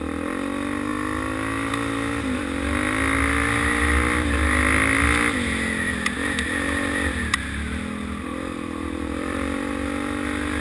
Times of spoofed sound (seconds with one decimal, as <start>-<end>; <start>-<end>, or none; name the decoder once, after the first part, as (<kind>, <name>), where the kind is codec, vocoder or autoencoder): 8.3-9.7 (vocoder, BigVGAN v2)